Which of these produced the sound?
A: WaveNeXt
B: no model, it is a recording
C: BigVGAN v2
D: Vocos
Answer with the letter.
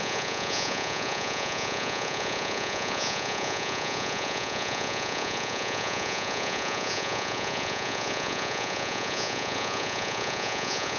D